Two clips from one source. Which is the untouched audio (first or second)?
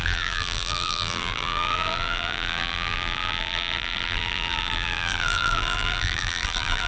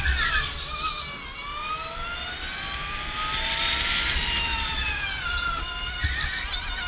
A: second